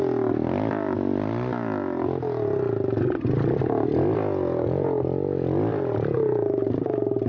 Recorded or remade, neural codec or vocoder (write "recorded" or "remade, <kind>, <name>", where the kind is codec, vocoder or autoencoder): recorded